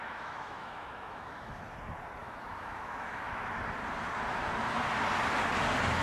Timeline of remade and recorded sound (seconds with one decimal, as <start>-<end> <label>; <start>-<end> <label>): 0.0-1.6 remade; 1.6-2.2 recorded; 2.2-3.5 remade; 3.5-6.0 recorded